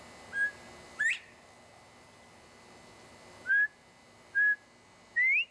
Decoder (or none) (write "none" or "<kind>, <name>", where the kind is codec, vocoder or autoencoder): none